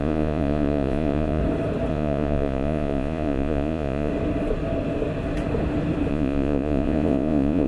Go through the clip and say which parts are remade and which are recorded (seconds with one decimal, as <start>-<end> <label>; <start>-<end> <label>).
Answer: 0.0-1.4 remade; 1.4-1.9 recorded; 1.9-4.1 remade; 4.1-6.1 recorded; 6.1-7.7 remade

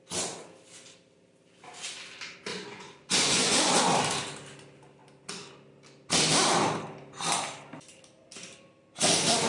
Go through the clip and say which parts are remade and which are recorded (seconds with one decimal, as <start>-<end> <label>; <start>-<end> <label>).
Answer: 0.0-2.5 recorded; 2.5-3.8 remade; 3.8-9.5 recorded

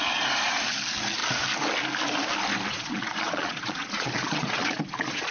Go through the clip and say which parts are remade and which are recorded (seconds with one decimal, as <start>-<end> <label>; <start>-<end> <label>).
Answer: 0.0-2.7 recorded; 2.7-5.3 remade

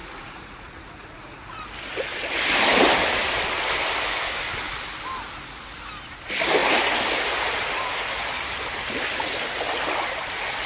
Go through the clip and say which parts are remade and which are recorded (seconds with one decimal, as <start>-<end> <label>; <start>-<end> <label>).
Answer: 0.0-1.6 remade; 1.6-10.7 recorded